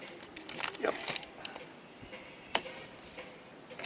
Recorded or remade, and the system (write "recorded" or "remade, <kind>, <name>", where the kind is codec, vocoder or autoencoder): recorded